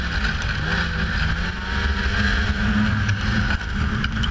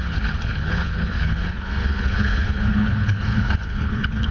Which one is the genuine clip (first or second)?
first